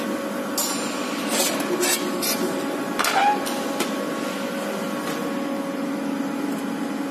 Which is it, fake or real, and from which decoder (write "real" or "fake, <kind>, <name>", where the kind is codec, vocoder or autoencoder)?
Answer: real